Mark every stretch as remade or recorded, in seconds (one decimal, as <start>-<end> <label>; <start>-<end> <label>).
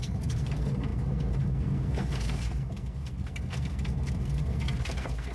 0.0-5.3 remade